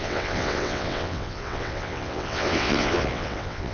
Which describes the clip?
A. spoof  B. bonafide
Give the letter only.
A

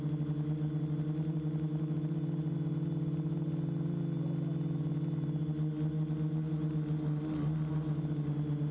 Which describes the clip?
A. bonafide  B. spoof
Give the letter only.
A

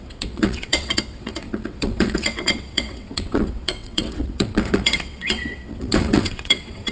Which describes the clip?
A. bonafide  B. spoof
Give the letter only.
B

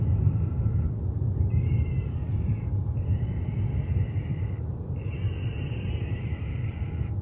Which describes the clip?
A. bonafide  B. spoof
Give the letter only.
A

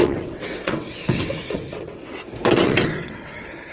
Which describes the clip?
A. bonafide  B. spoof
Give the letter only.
B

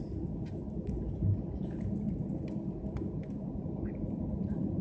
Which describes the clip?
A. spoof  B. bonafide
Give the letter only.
B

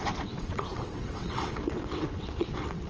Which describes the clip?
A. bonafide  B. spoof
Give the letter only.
B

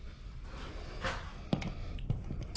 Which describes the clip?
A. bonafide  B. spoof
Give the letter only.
A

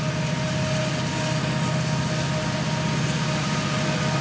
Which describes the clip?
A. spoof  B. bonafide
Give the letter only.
B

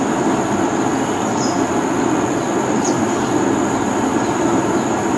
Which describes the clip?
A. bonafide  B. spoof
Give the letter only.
A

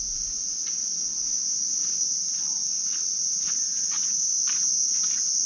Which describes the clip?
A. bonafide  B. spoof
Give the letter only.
A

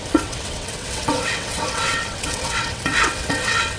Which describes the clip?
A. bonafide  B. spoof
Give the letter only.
B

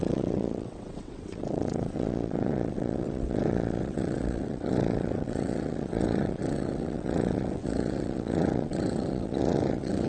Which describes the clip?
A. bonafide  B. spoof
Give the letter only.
B